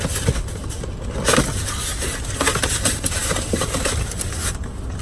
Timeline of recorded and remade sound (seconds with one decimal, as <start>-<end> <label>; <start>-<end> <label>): 0.0-1.9 recorded; 1.9-5.0 remade